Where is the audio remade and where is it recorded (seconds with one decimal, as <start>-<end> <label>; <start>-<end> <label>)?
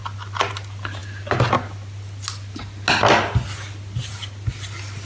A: 0.0-5.1 recorded